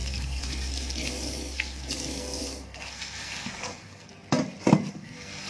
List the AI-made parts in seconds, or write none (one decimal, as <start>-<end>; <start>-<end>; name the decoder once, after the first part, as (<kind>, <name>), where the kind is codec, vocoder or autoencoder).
0.0-4.1 (codec, SNAC); 4.9-5.5